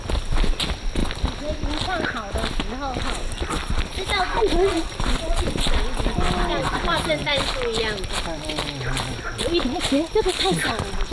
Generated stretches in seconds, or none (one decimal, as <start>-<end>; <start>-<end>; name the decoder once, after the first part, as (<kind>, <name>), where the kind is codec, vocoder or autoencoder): none